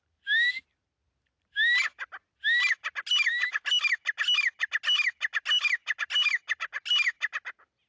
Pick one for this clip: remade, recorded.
recorded